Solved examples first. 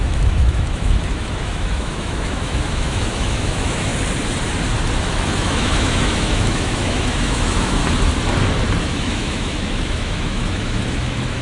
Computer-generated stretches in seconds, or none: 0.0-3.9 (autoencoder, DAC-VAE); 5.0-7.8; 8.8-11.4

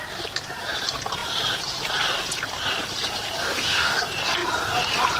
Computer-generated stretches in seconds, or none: 3.4-4.0 (autoencoder, DAC-VAE)

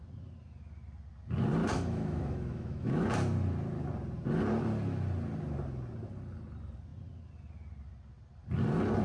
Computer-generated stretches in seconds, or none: 1.6-3.1 (autoencoder, DAC-VAE)